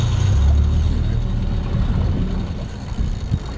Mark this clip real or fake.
real